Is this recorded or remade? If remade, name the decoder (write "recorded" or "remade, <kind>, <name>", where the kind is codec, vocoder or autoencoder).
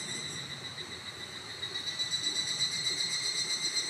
recorded